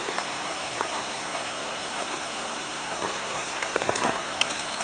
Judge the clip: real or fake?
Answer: fake